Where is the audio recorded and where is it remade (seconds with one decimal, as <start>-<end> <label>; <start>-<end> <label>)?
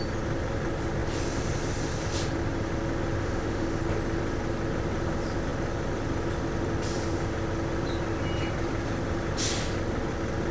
0.0-3.2 recorded; 3.2-3.8 remade; 3.8-10.5 recorded